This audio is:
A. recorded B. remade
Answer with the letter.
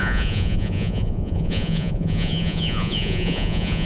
B